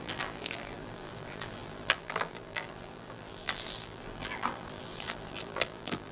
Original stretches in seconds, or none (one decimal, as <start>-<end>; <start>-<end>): none